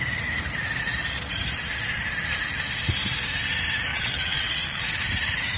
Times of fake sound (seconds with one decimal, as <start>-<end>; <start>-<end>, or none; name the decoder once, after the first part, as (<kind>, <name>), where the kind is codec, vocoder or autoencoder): 3.9-4.8 (vocoder, WaveNeXt)